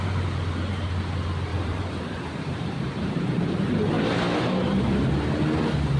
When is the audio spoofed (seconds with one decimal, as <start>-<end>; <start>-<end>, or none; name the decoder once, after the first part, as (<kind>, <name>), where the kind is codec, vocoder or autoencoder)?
1.5-5.1 (vocoder, BigVGAN v2)